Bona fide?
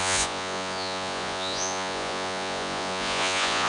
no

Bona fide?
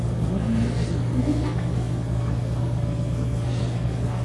no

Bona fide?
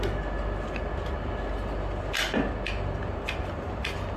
yes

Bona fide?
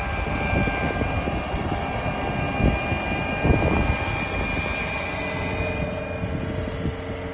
yes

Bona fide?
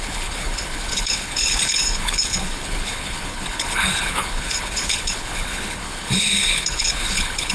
no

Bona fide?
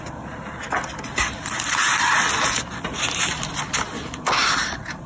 yes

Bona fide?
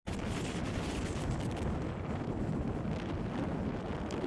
yes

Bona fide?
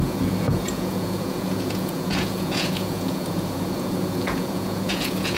no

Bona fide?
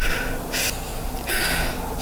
yes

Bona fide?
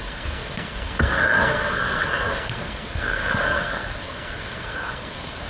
no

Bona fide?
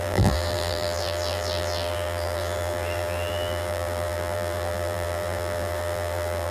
no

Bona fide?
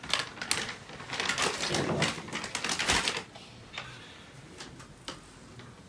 yes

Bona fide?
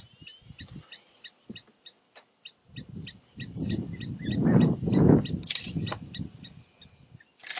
yes